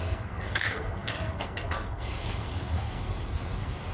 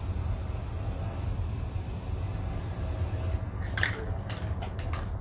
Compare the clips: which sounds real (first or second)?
second